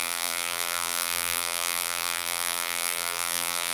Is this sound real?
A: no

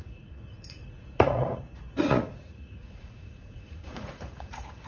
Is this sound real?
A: no